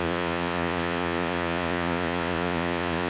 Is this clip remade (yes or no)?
yes